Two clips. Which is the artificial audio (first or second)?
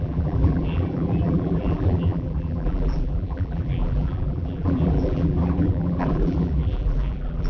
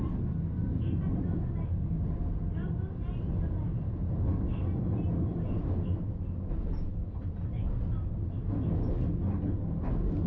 first